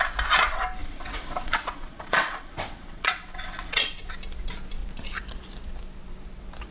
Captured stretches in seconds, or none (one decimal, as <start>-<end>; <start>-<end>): 0.0-0.8; 4.1-6.7